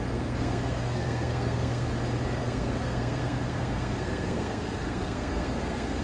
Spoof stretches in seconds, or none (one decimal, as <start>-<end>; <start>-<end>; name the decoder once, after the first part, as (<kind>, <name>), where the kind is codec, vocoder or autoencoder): 0.0-1.9 (codec, SNAC); 2.4-6.0